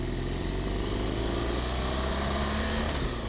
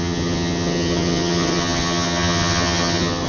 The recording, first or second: first